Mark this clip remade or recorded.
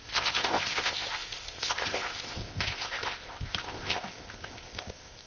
remade